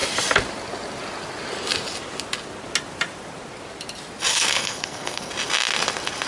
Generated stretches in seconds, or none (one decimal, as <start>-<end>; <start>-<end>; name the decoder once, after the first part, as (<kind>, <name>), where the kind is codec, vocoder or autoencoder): 4.3-5.3 (codec, SNAC)